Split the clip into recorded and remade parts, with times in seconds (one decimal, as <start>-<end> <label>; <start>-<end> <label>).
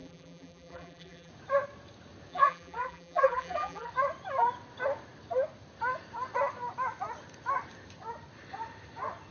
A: 0.0-1.3 remade; 1.3-2.3 recorded; 2.3-3.9 remade; 3.9-9.3 recorded